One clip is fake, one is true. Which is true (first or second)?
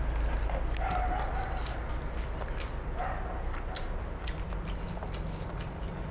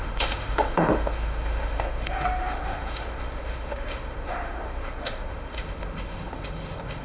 first